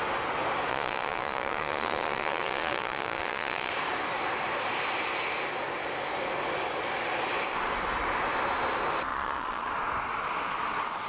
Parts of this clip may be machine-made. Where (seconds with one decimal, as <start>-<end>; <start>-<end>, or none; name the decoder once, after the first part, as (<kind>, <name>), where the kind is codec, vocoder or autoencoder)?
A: 0.7-3.7 (vocoder, Vocos); 9.1-9.7

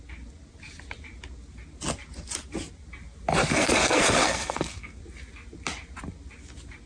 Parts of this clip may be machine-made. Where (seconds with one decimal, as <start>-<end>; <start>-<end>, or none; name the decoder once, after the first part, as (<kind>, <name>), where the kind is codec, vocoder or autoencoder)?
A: 3.5-5.0 (codec, SNAC)

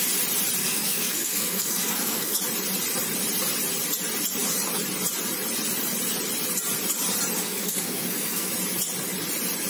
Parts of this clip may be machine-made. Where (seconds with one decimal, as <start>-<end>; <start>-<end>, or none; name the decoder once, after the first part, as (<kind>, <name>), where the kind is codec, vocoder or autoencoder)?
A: 0.6-2.4 (codec, SNAC); 7.4-8.5

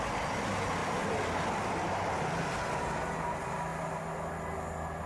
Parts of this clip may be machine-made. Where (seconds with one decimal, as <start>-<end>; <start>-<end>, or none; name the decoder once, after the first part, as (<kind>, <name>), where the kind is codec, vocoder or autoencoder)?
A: 0.8-2.4 (vocoder, BigVGAN v2)